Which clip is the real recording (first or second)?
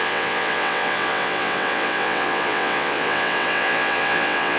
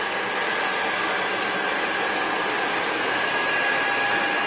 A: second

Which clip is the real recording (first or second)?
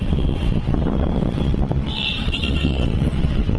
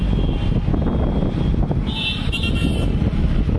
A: second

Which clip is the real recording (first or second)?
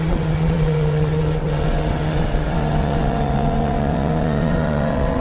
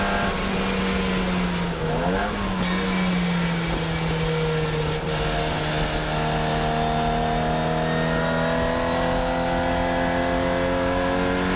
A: second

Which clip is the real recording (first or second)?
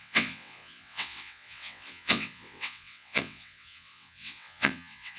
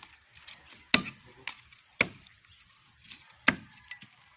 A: second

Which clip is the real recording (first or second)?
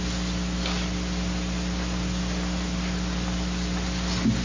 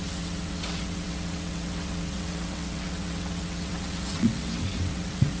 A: first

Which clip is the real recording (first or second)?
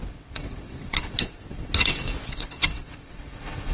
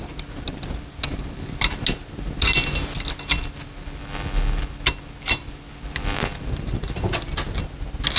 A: second